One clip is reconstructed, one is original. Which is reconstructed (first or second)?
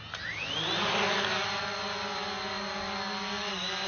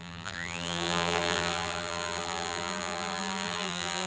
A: second